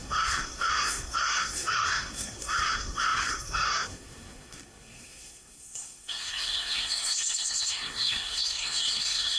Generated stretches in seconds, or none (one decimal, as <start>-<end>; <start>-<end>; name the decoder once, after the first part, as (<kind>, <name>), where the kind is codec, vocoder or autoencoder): 0.0-9.4 (codec, SNAC)